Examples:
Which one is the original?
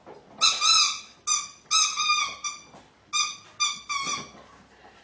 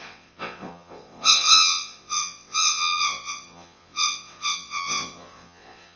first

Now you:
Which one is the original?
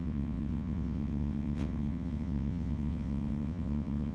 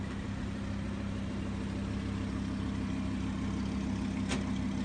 second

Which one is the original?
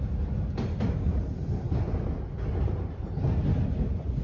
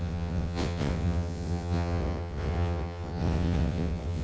first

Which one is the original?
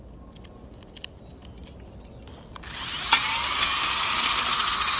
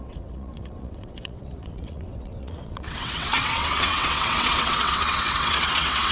first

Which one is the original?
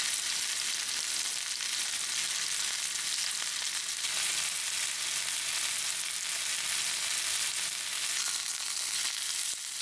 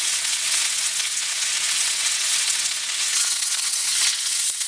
first